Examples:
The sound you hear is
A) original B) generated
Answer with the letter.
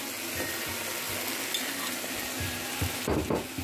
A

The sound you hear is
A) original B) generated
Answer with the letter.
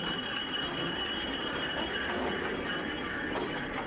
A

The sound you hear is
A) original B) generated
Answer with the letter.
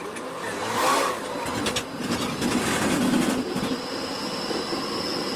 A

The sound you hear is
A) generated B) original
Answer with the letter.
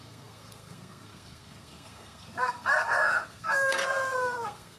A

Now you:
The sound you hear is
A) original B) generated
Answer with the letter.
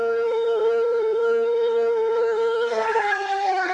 B